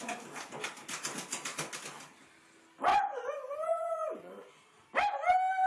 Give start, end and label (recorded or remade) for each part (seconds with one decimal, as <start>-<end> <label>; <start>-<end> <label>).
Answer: 0.0-2.9 recorded; 2.9-4.3 remade; 4.3-5.7 recorded

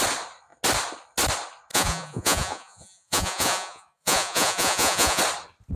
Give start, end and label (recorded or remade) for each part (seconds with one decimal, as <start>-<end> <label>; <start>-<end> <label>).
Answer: 0.0-1.7 recorded; 1.7-5.2 remade; 5.2-5.8 recorded

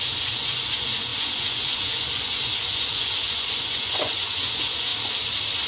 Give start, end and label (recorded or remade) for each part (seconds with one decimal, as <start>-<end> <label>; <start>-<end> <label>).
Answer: 0.0-4.9 remade; 4.9-5.7 recorded

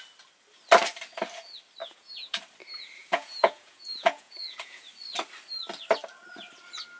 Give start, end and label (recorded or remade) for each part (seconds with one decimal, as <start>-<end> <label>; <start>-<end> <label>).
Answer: 0.0-1.8 recorded; 1.8-2.4 remade; 2.4-3.0 recorded; 3.0-4.9 remade; 4.9-7.0 recorded